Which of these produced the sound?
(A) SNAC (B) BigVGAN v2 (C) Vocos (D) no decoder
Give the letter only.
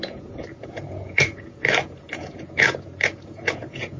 C